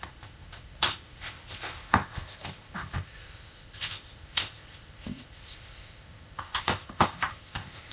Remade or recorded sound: remade